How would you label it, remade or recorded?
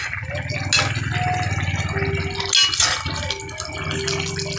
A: recorded